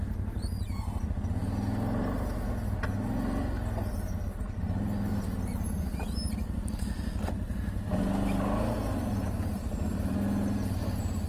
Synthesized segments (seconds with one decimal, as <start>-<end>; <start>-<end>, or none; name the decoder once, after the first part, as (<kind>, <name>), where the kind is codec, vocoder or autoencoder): none